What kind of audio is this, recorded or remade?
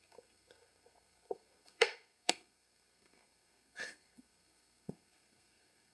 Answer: remade